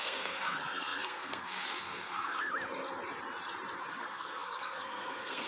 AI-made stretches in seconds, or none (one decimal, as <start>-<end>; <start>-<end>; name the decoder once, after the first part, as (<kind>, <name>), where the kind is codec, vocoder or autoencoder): 0.0-2.5 (codec, SNAC); 3.9-5.5